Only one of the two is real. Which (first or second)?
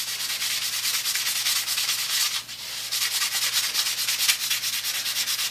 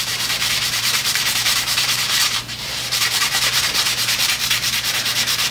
first